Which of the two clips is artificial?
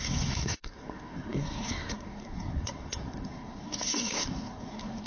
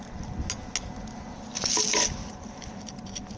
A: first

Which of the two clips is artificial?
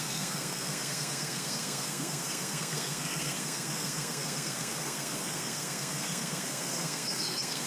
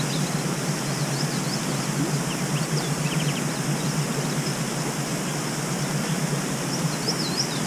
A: first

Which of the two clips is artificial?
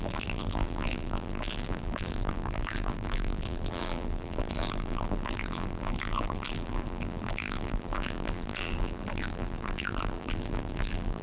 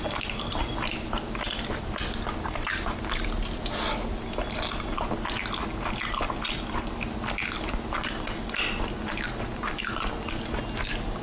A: first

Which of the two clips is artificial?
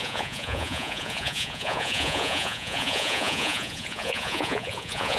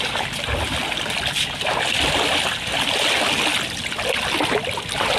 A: first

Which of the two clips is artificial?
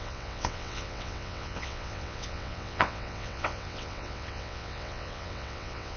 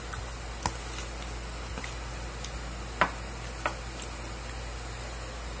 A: first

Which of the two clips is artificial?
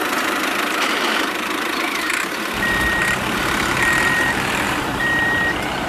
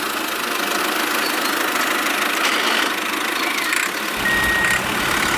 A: first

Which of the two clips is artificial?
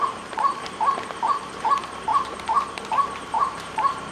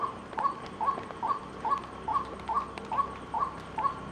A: first